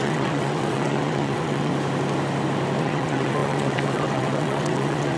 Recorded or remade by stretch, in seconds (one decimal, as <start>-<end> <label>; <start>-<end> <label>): 0.0-1.7 remade; 1.7-2.8 recorded; 2.8-5.2 remade